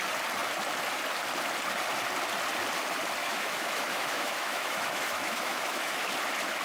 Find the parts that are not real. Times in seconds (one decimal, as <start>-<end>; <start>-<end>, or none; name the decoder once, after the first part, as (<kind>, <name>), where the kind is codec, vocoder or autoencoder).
3.2-6.1 (autoencoder, DAC-VAE)